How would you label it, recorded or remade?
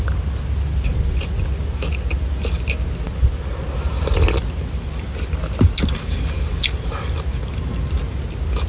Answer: recorded